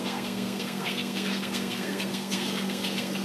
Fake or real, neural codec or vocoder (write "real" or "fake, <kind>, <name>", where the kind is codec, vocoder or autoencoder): fake, codec, SNAC